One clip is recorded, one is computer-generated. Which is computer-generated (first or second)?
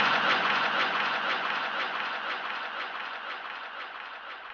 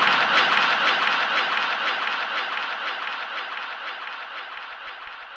first